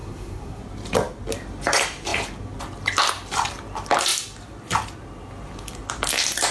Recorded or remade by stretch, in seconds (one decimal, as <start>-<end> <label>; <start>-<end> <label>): 0.0-0.6 remade; 0.6-6.5 recorded